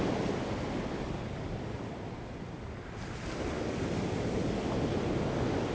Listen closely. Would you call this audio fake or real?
real